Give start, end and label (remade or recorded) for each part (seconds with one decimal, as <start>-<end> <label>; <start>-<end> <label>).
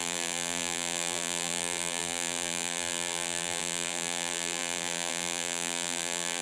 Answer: 0.0-6.4 remade